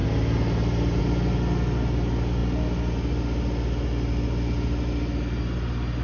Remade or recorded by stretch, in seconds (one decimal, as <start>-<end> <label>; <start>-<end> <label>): 0.0-6.0 recorded